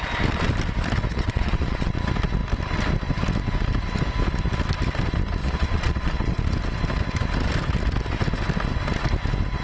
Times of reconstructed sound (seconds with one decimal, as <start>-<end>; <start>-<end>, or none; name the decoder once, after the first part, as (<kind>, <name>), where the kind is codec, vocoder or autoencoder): 1.1-2.0 (vocoder, Vocos); 5.4-6.5